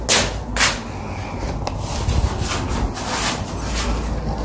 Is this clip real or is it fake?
real